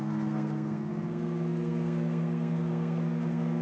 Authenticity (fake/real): fake